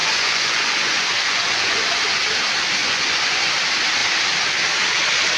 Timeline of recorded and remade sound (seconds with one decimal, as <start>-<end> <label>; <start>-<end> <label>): 0.0-2.0 remade; 2.0-2.8 recorded; 2.8-3.5 remade; 3.5-5.4 recorded